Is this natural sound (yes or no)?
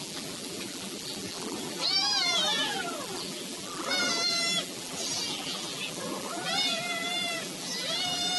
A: no